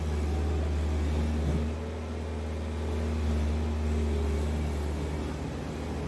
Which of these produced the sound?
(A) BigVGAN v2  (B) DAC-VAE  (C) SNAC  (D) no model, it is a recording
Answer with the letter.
D